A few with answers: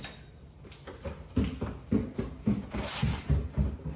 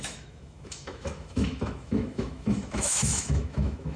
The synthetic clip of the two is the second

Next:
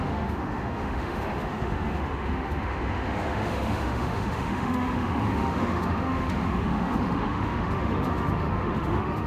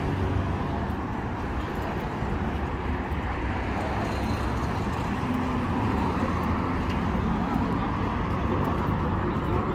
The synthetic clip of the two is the first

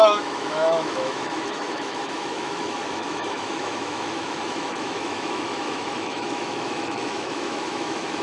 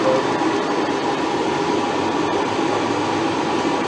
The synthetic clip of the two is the first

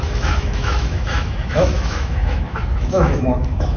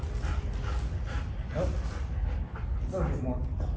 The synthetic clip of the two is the first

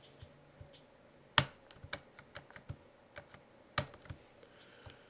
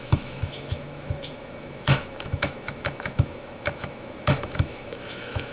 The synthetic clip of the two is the second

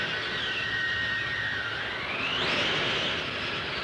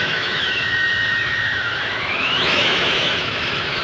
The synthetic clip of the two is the second